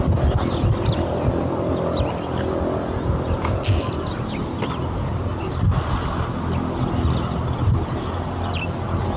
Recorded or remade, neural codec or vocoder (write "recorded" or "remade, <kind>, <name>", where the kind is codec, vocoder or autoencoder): recorded